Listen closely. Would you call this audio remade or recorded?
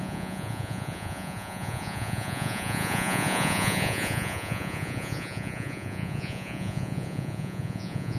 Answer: remade